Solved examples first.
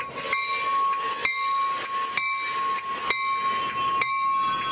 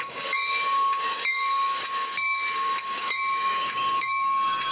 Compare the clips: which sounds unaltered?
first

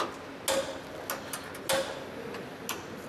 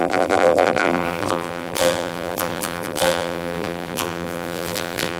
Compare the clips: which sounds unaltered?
first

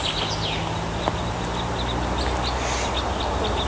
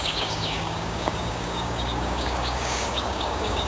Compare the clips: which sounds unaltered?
first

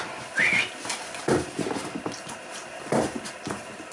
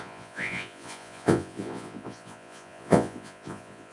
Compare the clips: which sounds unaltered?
first